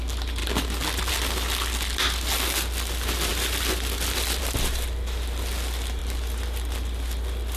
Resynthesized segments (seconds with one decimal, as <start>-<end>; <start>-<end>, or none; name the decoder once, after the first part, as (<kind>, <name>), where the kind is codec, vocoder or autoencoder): none